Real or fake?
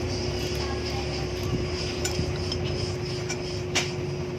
real